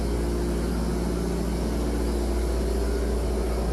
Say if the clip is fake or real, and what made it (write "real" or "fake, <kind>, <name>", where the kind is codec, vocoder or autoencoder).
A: real